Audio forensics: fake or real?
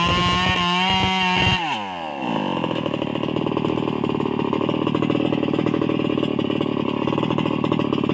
real